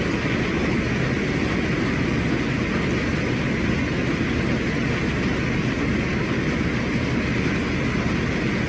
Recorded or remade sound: recorded